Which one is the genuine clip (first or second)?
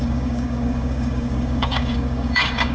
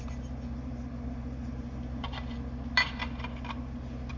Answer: second